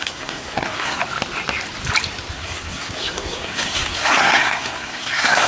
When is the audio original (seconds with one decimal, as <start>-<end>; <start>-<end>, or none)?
1.0-2.3